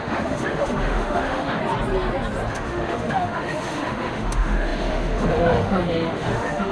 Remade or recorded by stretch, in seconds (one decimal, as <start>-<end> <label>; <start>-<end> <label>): 0.0-1.6 remade; 1.6-2.5 recorded; 2.5-6.7 remade